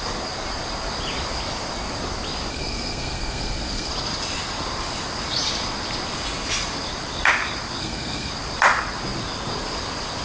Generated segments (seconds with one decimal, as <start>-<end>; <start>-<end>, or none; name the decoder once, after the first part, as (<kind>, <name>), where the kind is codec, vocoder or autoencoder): 2.5-3.9 (codec, SNAC); 7.8-8.3